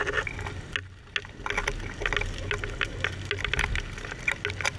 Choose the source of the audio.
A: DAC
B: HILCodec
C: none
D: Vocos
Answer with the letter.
C